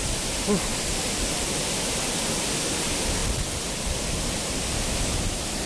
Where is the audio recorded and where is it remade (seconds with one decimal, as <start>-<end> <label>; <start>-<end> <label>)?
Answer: 0.0-5.7 recorded